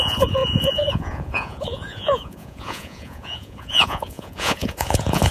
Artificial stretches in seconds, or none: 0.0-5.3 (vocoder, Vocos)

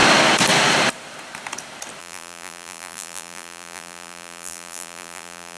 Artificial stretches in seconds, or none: 2.0-5.6 (vocoder, BigVGAN v2)

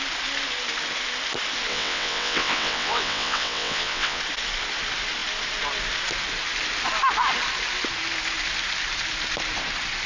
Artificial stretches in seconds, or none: 1.7-4.2 (vocoder, WaveNeXt)